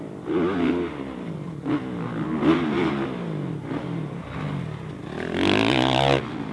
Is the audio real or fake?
real